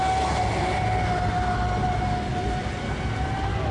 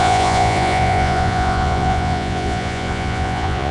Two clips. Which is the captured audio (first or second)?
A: first